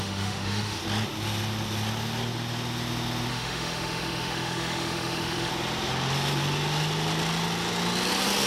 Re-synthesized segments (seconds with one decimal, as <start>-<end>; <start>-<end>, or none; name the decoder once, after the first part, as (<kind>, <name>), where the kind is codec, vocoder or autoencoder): 0.0-0.8 (autoencoder, DAC-VAE); 3.3-5.5